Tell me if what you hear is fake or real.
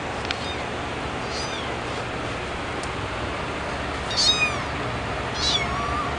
real